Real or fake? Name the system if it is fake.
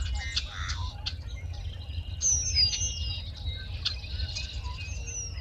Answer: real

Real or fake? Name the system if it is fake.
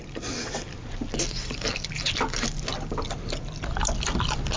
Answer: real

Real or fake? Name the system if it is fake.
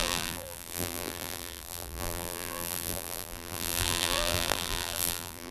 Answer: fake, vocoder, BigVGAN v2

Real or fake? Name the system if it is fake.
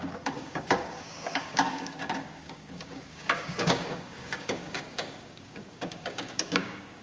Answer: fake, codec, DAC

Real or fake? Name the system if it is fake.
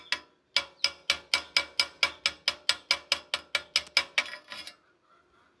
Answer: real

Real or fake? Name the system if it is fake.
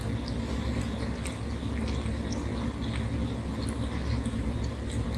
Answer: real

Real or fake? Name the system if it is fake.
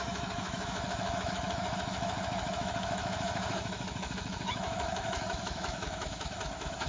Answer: fake, autoencoder, DAC-VAE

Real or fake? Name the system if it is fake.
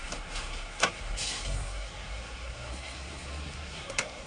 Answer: fake, codec, SNAC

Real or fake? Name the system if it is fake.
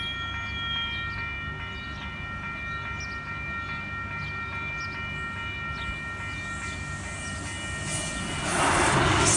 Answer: real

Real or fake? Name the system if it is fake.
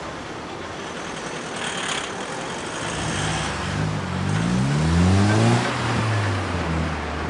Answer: real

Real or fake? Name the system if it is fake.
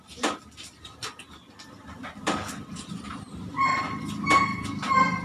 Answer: real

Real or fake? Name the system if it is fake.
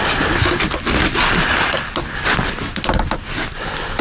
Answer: real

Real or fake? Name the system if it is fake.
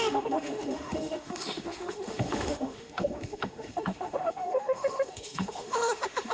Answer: fake, autoencoder, DAC-VAE